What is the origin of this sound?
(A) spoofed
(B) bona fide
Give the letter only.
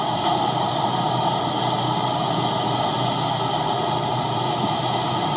B